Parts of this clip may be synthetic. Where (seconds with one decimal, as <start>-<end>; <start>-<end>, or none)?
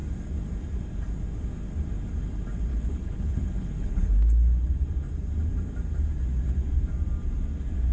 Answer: 2.7-4.1